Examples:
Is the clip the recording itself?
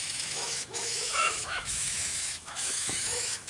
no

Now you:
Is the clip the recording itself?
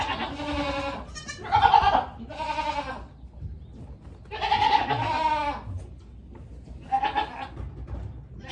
yes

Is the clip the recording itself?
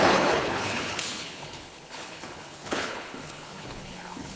no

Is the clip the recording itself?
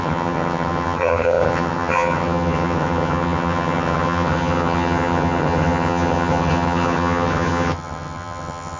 no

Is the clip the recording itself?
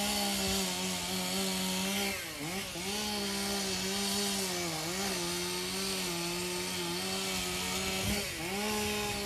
yes